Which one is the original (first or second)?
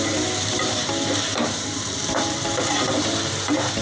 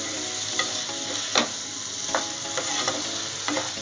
second